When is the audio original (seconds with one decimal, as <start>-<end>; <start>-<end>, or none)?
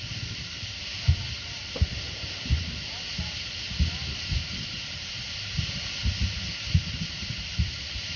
6.0-6.8